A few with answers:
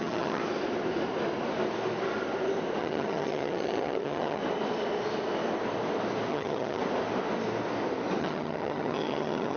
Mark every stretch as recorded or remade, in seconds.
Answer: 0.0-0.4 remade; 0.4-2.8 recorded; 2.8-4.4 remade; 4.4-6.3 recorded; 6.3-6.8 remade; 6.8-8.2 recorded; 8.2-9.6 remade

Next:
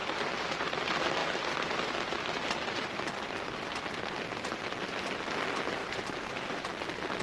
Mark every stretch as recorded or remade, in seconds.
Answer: 0.0-0.5 remade; 0.5-5.8 recorded; 5.8-6.7 remade; 6.7-7.2 recorded

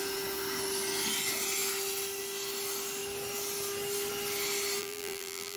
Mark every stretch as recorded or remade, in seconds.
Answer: 0.0-4.8 recorded; 4.8-5.6 remade

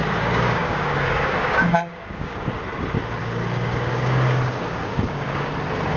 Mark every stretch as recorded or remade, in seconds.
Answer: 0.0-2.6 remade; 2.6-3.2 recorded; 3.2-5.5 remade; 5.5-6.0 recorded

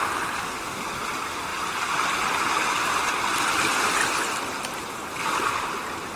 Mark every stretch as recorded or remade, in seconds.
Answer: 0.0-6.2 recorded

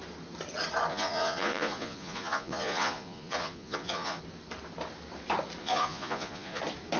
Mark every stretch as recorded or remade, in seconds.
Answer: 0.0-0.9 recorded; 0.9-4.2 remade; 4.2-5.6 recorded; 5.6-6.6 remade; 6.6-7.0 recorded

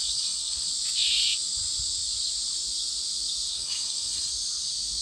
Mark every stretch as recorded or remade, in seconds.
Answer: 0.0-0.7 remade; 0.7-3.5 recorded; 3.5-4.3 remade; 4.3-5.0 recorded

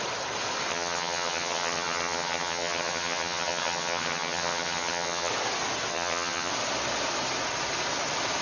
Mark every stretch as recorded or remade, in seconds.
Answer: 0.0-0.7 recorded; 0.7-5.3 remade; 5.3-5.9 recorded; 5.9-6.5 remade; 6.5-8.4 recorded